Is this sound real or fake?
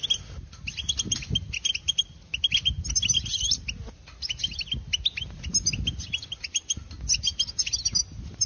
real